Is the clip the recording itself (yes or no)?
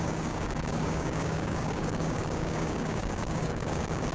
no